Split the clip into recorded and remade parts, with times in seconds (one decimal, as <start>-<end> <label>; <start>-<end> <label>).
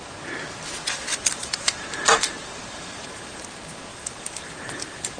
0.0-1.1 recorded; 1.1-3.4 remade; 3.4-3.9 recorded; 3.9-5.2 remade